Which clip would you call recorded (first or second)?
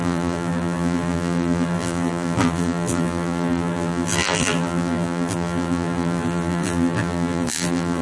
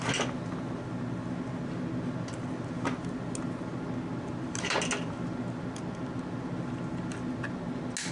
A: second